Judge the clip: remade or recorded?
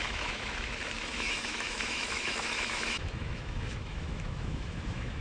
remade